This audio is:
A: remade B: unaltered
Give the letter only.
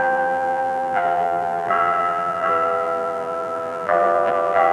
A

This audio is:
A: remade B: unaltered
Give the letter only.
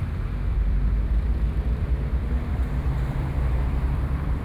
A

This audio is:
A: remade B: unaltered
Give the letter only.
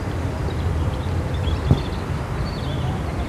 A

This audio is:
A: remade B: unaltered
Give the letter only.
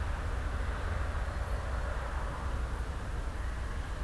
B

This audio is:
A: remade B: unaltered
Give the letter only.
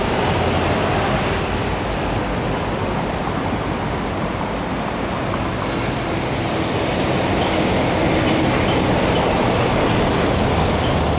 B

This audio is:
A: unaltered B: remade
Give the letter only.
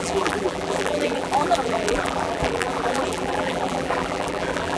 B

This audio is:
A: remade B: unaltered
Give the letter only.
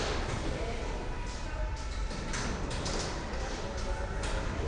A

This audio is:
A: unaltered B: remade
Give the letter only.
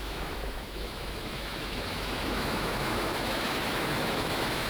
B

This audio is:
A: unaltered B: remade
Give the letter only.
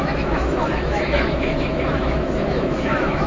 B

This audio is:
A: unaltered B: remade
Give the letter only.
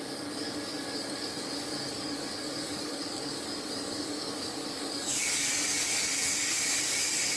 B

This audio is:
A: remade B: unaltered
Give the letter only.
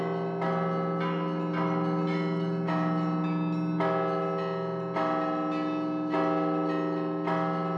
B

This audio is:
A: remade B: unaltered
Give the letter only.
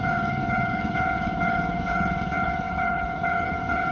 A